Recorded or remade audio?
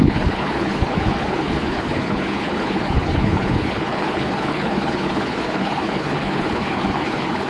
remade